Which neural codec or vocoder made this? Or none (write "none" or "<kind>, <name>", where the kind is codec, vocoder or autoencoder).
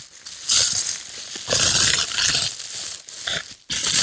none